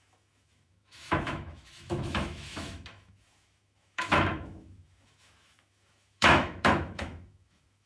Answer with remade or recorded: remade